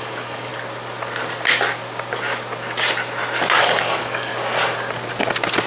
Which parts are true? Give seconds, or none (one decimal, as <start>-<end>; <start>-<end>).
0.5-3.6; 4.3-5.7